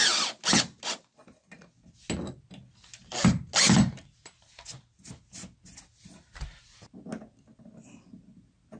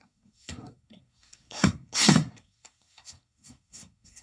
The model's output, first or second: second